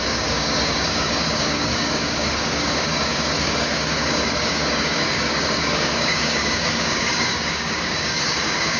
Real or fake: fake